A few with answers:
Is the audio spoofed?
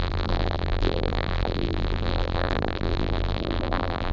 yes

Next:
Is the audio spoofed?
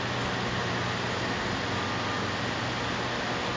no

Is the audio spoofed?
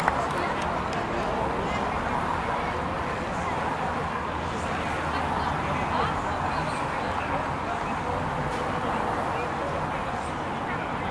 no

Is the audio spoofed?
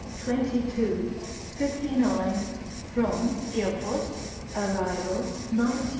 yes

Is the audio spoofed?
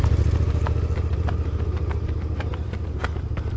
no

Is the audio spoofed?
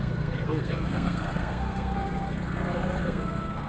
yes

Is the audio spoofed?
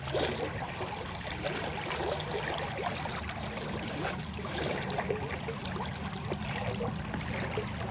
no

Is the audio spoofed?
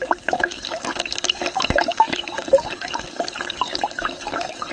yes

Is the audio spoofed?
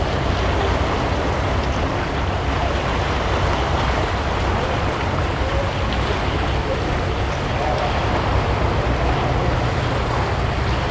no